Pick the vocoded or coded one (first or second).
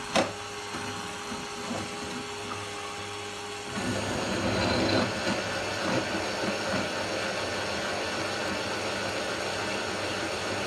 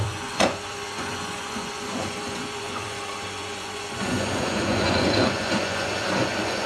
second